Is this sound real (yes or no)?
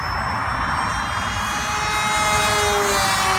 yes